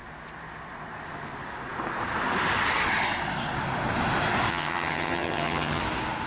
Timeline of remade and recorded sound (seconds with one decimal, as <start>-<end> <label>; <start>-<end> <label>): 0.0-4.5 recorded; 4.5-5.8 remade; 5.8-6.3 recorded